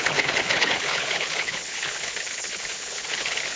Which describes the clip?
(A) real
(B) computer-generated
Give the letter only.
B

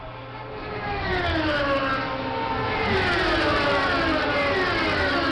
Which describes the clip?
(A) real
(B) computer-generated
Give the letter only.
A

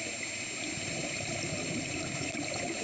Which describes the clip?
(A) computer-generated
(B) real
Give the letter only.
B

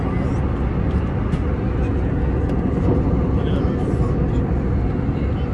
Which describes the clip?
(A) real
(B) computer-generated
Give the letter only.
A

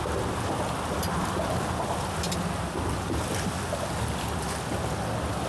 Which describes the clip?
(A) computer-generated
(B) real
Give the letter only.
B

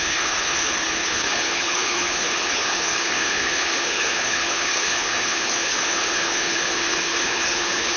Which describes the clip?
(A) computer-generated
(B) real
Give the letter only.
A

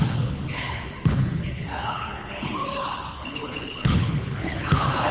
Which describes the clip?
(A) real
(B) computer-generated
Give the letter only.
B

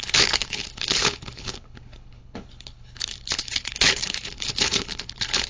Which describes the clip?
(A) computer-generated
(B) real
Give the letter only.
A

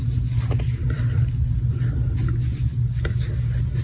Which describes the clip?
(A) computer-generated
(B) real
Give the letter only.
B